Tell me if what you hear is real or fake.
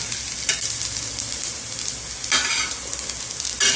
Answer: real